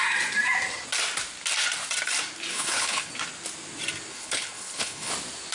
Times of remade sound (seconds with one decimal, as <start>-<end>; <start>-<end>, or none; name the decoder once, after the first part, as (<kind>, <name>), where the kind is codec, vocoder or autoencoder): 2.5-3.1 (codec, HILCodec); 4.1-5.1